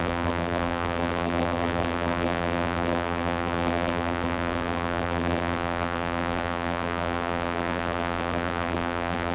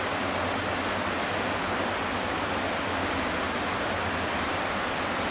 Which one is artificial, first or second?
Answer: first